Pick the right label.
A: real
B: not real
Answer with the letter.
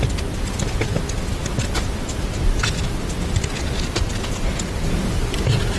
A